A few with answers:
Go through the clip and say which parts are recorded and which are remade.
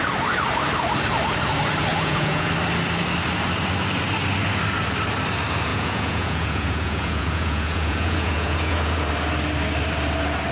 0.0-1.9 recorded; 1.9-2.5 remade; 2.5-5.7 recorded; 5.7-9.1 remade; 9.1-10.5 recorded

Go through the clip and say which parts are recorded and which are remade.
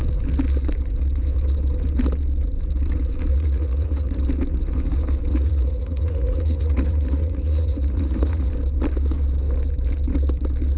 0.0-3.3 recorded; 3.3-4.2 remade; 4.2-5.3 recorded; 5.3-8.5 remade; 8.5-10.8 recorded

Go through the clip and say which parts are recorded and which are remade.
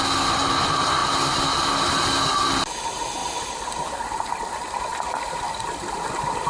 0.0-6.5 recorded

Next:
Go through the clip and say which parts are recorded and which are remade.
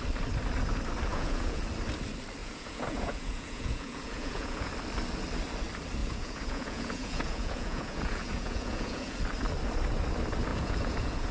0.0-1.1 recorded; 1.1-1.6 remade; 1.6-2.4 recorded; 2.4-4.7 remade; 4.7-6.0 recorded; 6.0-9.2 remade; 9.2-10.5 recorded; 10.5-11.3 remade